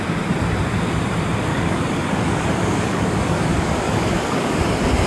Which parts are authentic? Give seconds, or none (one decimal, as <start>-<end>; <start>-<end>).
0.0-1.5; 4.6-5.1